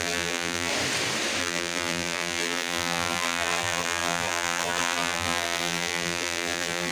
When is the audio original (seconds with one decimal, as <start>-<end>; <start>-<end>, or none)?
0.7-1.4